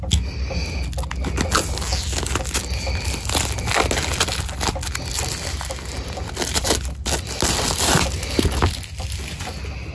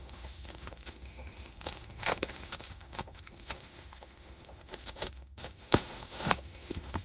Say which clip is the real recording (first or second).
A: first